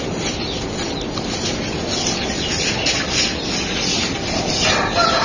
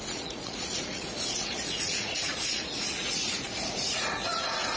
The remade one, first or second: second